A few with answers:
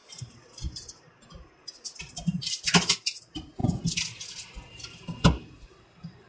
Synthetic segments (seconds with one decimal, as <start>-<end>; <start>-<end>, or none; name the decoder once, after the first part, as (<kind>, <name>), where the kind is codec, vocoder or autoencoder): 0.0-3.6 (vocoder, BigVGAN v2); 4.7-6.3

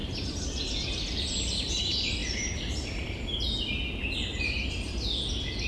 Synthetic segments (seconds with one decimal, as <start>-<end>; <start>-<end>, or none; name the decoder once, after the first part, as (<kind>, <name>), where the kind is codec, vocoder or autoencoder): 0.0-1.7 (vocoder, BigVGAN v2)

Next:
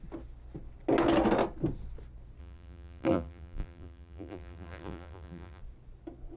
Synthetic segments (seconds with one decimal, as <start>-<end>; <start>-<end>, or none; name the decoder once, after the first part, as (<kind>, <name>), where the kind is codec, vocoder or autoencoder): 2.4-5.6 (vocoder, BigVGAN v2)

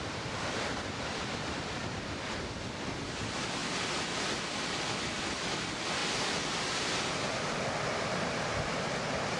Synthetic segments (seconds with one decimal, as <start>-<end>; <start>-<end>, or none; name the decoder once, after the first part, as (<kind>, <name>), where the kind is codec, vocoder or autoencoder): 0.0-3.6 (vocoder, BigVGAN v2); 5.2-6.0; 8.9-9.4